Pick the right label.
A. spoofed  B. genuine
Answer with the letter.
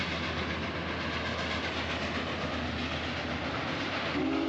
B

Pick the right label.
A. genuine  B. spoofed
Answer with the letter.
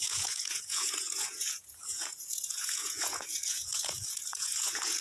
B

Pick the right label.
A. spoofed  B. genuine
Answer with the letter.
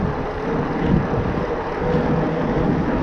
B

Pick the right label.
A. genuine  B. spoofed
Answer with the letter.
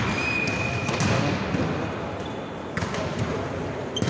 A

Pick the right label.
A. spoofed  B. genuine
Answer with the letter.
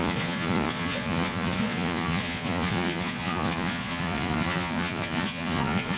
A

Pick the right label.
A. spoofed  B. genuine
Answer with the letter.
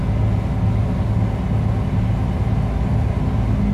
B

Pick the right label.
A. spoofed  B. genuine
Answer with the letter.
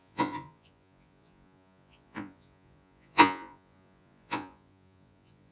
A